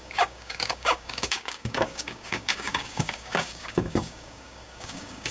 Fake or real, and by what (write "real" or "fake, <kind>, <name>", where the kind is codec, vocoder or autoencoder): fake, codec, DAC